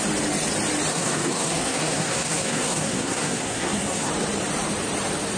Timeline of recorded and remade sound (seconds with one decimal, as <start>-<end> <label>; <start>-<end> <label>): 0.0-0.9 recorded; 0.9-4.1 remade; 4.1-5.4 recorded